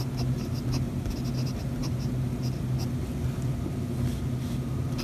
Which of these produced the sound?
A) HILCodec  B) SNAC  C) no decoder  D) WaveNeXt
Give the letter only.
C